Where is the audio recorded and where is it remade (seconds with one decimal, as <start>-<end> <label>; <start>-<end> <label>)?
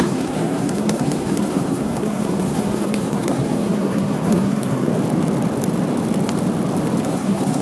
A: 0.0-4.9 remade; 4.9-7.0 recorded; 7.0-7.6 remade